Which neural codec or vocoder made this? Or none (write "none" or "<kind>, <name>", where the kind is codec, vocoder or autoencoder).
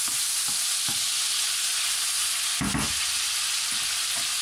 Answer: none